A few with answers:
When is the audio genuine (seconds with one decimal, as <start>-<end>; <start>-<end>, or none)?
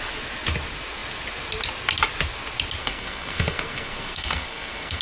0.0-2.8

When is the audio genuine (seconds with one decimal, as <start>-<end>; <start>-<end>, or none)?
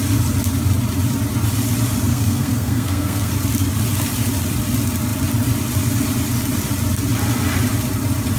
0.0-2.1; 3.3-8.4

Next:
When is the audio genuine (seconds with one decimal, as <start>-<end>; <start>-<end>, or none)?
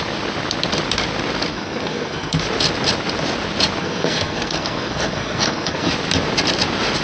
0.0-1.5; 2.4-3.8; 5.9-7.0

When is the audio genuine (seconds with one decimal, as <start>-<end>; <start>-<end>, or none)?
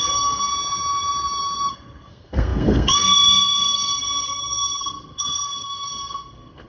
0.5-1.7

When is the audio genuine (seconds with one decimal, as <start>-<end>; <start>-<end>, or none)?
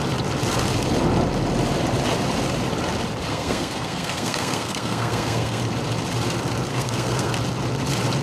0.0-3.3; 5.6-6.7; 7.3-8.2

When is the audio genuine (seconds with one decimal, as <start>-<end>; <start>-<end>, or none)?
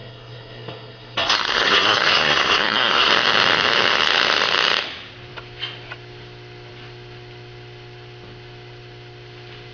3.1-9.7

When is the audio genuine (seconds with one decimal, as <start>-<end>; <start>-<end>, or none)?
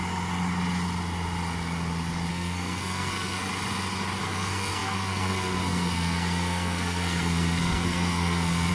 0.0-2.3; 3.5-4.2